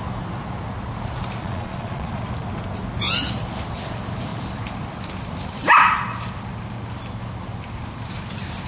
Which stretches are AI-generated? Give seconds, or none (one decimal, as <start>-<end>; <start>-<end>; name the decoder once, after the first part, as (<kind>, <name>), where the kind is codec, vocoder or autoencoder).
1.4-2.1 (vocoder, Vocos)